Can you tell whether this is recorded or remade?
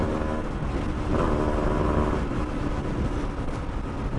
recorded